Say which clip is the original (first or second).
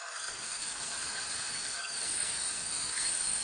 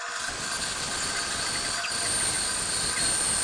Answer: second